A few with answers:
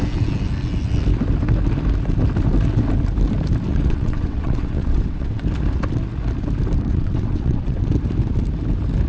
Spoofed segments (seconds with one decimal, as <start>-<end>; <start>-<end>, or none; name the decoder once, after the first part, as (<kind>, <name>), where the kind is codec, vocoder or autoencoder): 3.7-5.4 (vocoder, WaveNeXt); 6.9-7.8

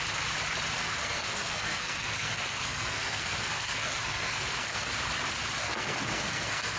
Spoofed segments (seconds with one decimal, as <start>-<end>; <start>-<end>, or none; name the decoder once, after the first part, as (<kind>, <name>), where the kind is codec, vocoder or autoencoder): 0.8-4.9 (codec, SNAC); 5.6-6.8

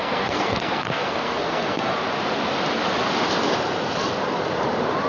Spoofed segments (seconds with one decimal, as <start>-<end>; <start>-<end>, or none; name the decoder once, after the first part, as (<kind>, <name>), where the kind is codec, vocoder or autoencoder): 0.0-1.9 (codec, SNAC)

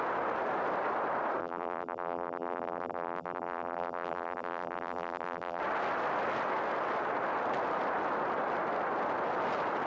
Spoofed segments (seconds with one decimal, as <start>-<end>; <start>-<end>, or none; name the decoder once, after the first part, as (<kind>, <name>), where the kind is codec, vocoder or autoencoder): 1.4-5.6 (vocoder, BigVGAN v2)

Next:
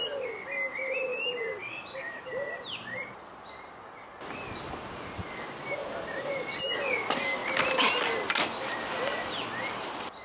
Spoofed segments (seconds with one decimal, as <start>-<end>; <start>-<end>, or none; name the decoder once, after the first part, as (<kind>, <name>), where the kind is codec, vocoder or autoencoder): 1.1-3.4 (vocoder, BigVGAN v2); 5.8-6.3

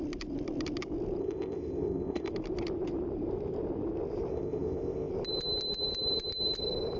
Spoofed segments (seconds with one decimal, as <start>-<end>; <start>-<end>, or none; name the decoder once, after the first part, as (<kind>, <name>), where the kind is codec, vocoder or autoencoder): 1.2-2.3 (codec, ZipCodec); 4.3-5.1

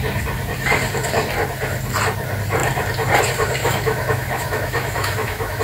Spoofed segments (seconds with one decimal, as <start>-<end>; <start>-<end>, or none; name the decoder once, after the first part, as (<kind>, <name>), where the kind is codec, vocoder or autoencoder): 3.6-5.6 (autoencoder, DAC-VAE)

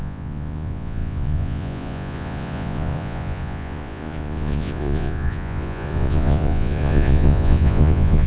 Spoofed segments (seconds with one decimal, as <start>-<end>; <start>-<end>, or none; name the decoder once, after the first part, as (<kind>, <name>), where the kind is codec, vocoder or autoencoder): 0.0-8.3 (vocoder, Vocos)